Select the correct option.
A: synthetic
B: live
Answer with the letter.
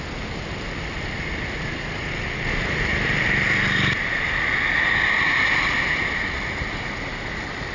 B